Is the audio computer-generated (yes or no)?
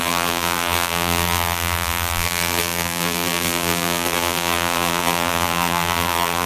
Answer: yes